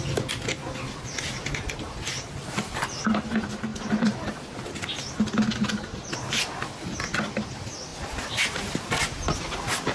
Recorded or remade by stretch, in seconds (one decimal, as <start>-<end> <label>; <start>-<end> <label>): 0.0-9.9 recorded